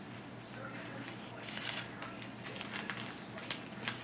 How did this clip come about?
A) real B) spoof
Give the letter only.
A